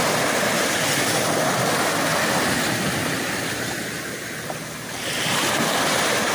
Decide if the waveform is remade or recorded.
recorded